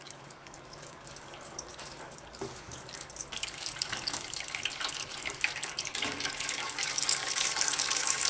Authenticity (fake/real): fake